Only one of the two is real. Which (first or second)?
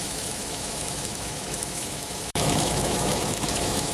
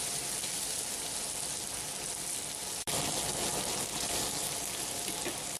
second